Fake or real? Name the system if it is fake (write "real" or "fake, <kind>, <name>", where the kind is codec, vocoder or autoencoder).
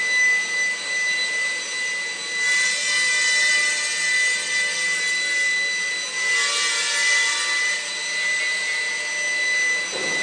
real